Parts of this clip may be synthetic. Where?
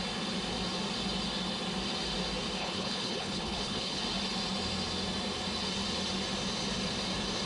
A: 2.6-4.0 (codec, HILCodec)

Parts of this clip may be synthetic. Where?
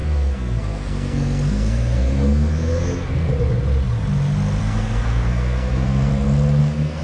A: 0.0-3.3 (codec, SNAC); 4.6-6.1; 6.6-7.0